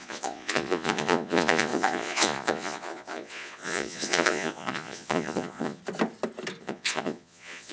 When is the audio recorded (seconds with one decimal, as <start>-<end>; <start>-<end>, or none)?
5.8-6.6